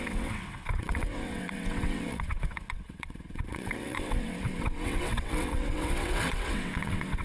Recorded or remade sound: remade